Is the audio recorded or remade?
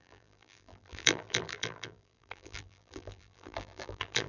remade